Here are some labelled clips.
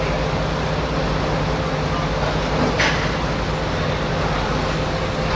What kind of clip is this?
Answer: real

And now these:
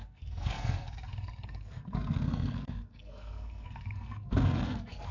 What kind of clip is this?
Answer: fake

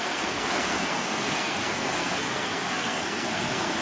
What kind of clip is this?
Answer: fake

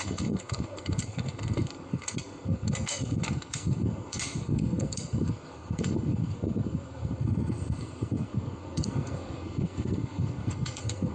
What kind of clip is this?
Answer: fake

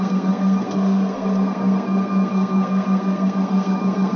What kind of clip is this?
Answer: fake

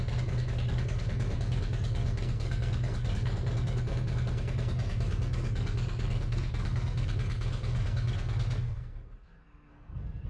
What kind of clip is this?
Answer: fake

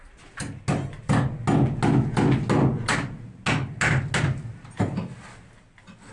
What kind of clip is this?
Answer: real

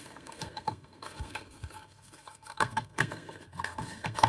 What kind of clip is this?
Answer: fake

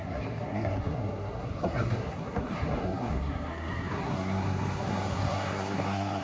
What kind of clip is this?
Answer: fake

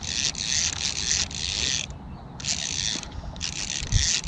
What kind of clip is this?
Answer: real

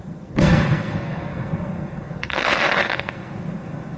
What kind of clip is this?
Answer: fake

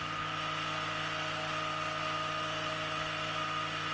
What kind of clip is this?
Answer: real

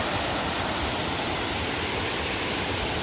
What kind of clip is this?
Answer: real